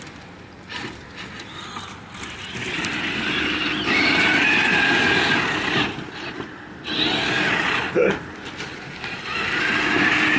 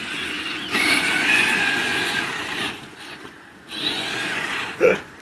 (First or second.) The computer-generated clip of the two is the second